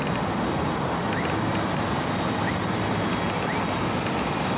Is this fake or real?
real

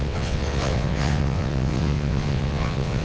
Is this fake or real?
fake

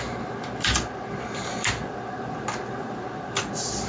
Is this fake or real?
real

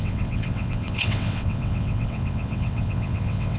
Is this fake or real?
fake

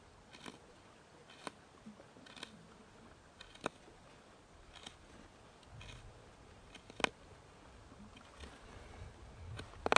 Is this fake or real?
real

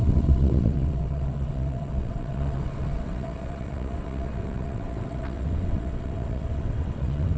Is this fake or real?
fake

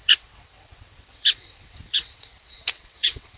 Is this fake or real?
fake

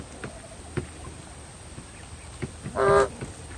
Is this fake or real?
real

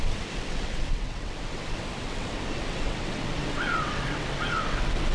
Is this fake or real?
fake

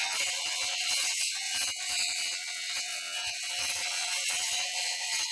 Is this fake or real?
fake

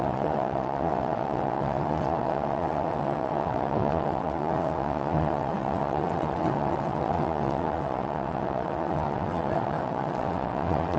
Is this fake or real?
fake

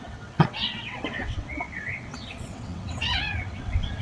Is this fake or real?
fake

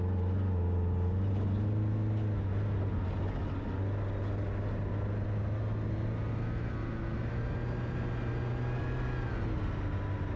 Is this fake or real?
real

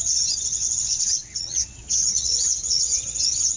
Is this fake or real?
fake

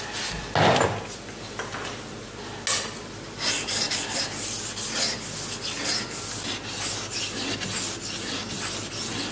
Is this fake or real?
real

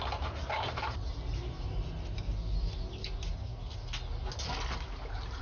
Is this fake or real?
real